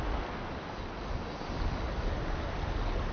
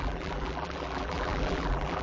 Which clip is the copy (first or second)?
second